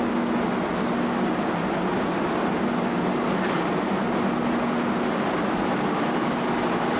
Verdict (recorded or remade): recorded